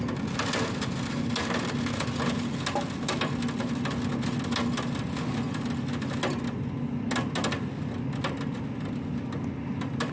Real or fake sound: real